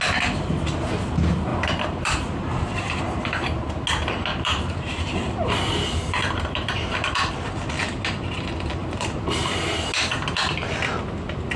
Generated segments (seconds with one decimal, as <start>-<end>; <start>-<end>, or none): 1.5-3.8; 4.3-7.3; 8.8-9.6

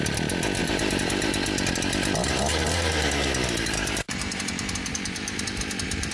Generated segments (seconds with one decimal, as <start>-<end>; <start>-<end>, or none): 0.6-1.3; 2.2-6.1